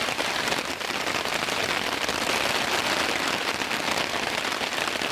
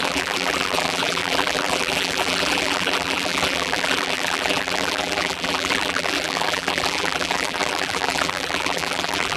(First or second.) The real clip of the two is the first